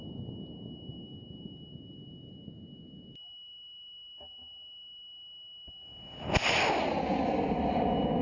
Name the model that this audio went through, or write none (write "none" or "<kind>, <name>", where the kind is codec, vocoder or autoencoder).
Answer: none